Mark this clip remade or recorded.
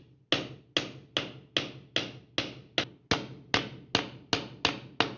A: recorded